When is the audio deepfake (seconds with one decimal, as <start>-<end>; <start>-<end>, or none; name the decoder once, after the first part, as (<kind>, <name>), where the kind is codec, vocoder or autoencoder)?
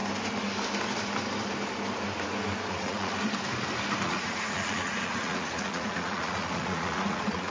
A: 2.7-3.1 (vocoder, Vocos); 4.0-7.5